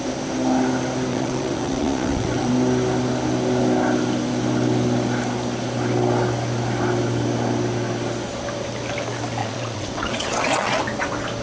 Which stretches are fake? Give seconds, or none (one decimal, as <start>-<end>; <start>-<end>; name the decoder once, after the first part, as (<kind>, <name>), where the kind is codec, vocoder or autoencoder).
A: 1.1-2.5 (vocoder, WaveNeXt); 9.4-10.8